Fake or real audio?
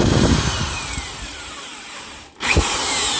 fake